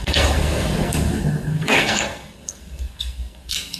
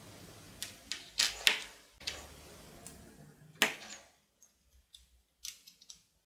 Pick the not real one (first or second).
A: first